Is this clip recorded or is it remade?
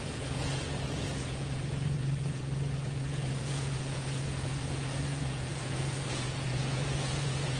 remade